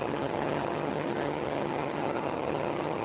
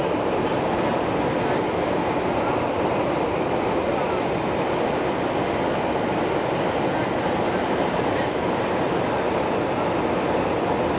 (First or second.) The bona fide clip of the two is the second